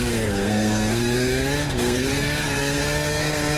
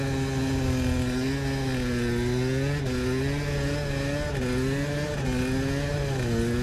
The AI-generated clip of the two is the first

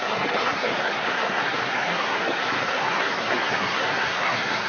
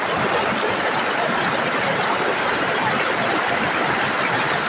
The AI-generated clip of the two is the first